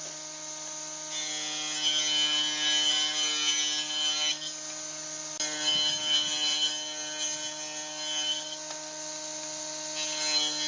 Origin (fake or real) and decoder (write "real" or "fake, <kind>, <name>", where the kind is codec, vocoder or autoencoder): real